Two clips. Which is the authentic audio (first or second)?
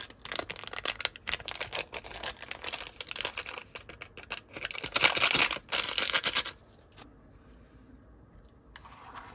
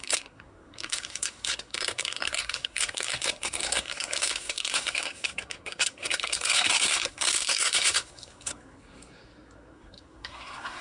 first